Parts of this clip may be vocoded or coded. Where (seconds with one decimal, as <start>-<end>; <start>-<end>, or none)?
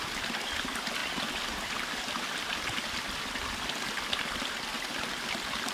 none